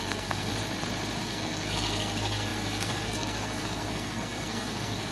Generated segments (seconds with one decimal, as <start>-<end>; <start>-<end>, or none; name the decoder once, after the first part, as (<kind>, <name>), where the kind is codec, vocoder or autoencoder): 0.0-0.5 (codec, SNAC); 1.2-5.1